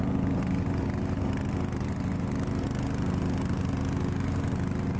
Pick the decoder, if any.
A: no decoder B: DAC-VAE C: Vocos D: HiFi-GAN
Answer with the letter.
A